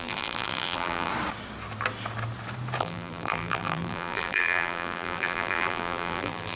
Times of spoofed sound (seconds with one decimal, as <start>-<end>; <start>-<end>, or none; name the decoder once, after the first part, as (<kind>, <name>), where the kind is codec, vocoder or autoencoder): 0.0-1.1 (vocoder, BigVGAN v2); 2.8-6.6